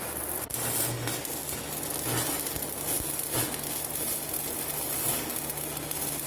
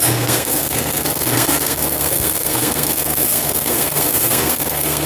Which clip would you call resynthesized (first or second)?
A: second